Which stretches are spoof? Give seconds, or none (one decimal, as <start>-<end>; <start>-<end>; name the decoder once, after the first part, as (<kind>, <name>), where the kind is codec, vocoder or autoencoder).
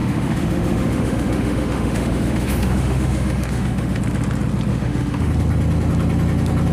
0.0-4.0 (autoencoder, DAC-VAE); 4.7-5.3